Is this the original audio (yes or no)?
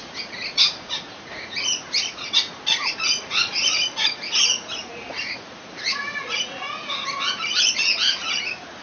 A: no